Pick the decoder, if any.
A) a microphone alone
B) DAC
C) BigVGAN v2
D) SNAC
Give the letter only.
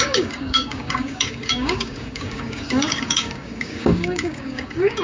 B